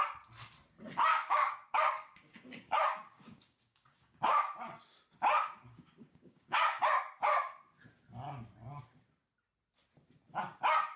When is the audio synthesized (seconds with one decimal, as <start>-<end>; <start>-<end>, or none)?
1.1-4.2; 5.7-6.8